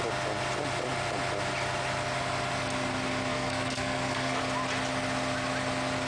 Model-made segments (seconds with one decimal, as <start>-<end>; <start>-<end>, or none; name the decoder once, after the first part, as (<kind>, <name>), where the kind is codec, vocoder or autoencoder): 3.3-4.4 (codec, SNAC)